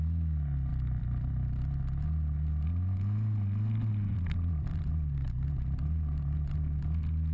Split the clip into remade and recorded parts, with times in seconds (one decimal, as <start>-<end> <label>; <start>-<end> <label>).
0.0-0.7 recorded; 0.7-1.3 remade; 1.3-4.1 recorded; 4.1-4.9 remade; 4.9-7.3 recorded